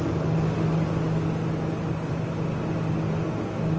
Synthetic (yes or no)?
no